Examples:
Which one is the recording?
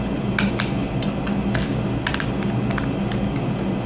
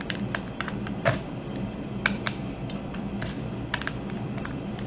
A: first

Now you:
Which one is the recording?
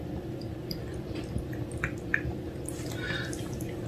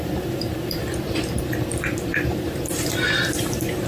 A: first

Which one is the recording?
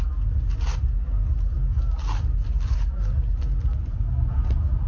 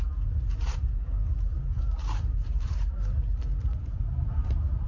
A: first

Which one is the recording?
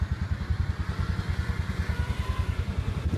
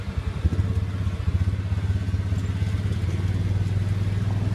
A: second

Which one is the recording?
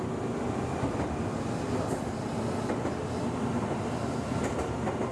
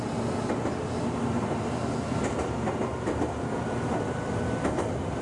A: second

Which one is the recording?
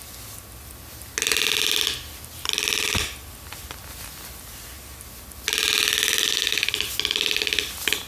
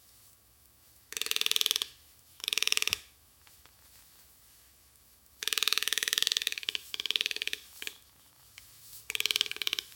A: first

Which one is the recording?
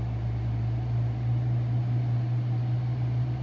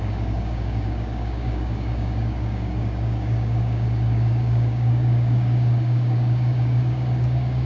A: first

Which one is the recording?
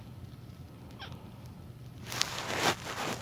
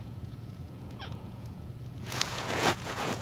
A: first